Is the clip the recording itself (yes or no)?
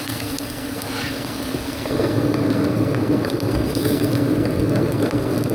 no